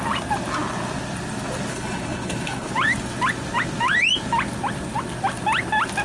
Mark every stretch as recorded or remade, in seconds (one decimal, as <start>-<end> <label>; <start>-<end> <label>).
0.0-1.7 recorded; 1.7-2.7 remade; 2.7-6.0 recorded